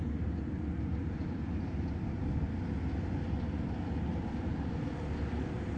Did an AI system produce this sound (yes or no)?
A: no